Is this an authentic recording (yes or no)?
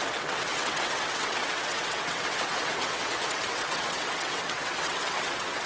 no